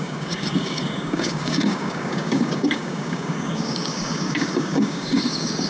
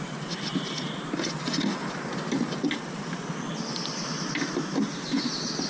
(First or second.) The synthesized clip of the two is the first